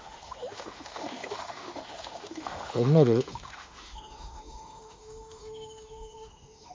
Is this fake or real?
fake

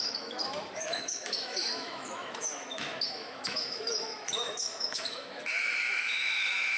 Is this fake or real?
fake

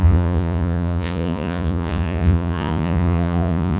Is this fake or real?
fake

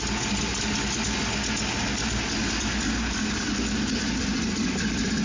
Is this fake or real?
real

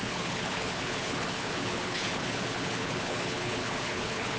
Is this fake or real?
fake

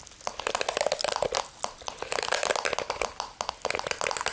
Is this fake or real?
real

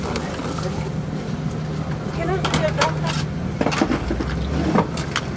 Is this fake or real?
real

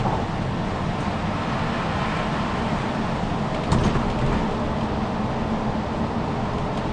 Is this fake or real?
real